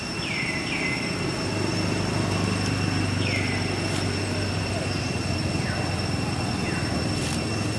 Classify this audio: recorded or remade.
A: recorded